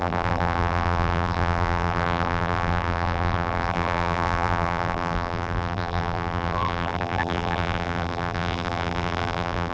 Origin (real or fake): fake